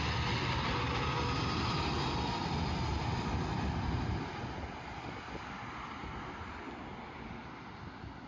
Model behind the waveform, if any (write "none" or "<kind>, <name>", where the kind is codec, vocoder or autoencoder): none